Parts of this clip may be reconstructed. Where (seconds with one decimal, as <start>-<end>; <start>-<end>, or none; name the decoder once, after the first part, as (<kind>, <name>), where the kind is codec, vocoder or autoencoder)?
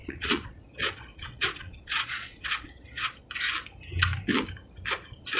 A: 0.0-3.2 (vocoder, Vocos)